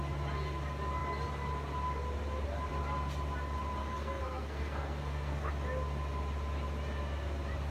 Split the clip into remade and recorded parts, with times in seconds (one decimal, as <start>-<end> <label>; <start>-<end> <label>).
0.0-3.8 recorded; 3.8-5.5 remade; 5.5-7.7 recorded